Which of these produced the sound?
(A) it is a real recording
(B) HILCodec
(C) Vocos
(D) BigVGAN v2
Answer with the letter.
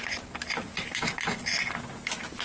A